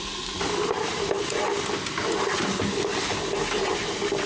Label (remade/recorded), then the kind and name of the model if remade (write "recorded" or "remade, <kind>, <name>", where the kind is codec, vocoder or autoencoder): recorded